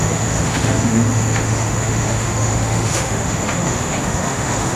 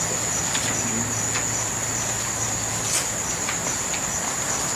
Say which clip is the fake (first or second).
first